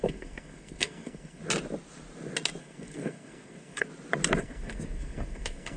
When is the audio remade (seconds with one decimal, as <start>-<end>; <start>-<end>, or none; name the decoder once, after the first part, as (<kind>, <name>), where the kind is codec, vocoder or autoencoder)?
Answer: 0.0-1.4 (codec, SNAC); 2.6-3.9; 4.4-5.8

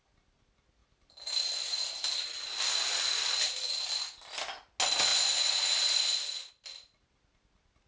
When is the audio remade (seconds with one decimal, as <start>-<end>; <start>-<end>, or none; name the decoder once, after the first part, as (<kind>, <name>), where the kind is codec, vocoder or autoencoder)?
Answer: 0.8-4.0 (vocoder, BigVGAN v2)

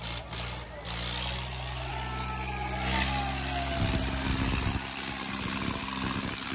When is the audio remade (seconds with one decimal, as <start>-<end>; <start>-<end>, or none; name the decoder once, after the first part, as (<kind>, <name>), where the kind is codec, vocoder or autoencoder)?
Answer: none

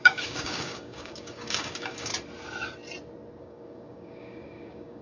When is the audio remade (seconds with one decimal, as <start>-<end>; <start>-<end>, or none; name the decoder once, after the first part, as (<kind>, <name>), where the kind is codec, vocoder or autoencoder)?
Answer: 0.0-2.1 (codec, DAC); 3.4-5.0